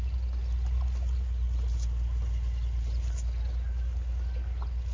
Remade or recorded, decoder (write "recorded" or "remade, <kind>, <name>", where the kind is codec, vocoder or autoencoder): recorded